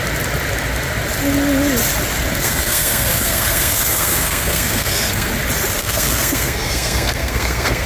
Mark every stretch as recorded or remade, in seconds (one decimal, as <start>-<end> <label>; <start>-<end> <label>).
0.0-2.4 recorded; 2.4-5.3 remade; 5.3-5.8 recorded; 5.8-7.9 remade